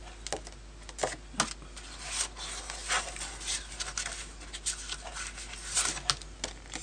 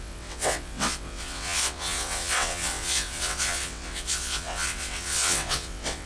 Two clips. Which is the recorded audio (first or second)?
first